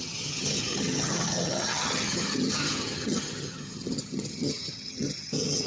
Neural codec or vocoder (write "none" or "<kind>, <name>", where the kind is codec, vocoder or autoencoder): vocoder, HiFi-GAN